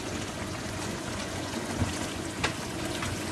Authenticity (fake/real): fake